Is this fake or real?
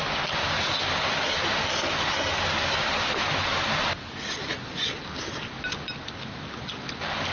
real